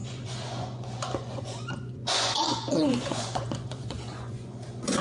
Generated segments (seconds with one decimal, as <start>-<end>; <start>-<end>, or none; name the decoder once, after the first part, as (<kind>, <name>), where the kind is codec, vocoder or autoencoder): 0.0-5.0 (vocoder, Vocos)